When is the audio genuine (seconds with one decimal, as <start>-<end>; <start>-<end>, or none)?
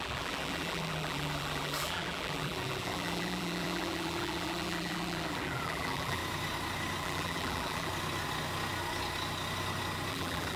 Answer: 6.2-7.0; 7.9-10.1